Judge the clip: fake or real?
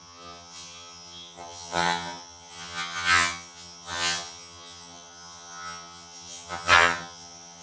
fake